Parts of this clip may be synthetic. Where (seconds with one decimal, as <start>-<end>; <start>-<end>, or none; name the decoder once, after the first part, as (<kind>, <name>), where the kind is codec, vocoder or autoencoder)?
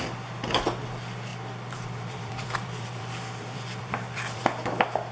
1.3-4.4 (vocoder, BigVGAN v2)